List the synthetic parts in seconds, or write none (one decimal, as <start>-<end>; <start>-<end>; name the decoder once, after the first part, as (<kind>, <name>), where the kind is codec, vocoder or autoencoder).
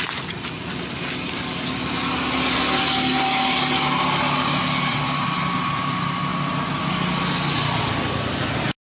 none